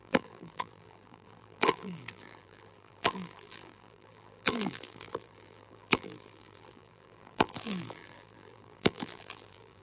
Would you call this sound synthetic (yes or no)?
yes